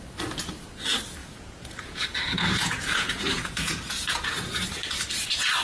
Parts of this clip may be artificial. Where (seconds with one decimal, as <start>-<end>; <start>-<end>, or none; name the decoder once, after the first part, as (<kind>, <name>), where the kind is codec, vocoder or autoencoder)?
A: 1.2-4.6 (vocoder, Vocos)